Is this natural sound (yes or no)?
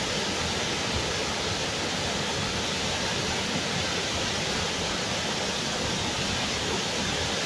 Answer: yes